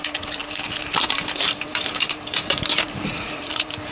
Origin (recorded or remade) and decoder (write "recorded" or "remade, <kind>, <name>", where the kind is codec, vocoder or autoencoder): remade, vocoder, BigVGAN v2